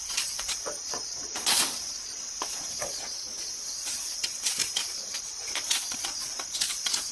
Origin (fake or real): fake